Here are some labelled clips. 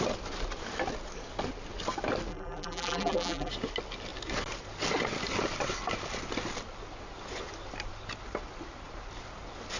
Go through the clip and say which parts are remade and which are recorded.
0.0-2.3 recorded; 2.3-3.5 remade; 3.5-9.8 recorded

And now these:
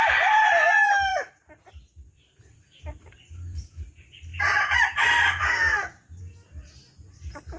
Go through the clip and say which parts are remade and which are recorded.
0.0-7.6 recorded